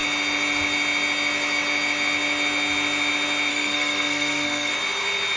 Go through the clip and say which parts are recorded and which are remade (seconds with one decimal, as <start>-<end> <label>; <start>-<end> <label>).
0.0-3.5 recorded; 3.5-4.7 remade; 4.7-5.4 recorded